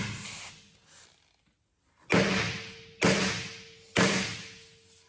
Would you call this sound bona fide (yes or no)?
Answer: yes